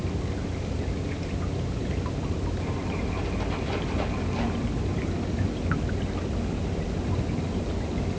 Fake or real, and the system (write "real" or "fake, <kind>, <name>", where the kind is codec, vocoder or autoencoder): real